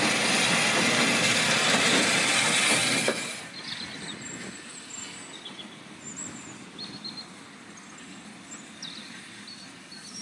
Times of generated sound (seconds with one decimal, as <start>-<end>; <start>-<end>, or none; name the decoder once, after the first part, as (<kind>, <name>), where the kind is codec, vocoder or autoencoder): none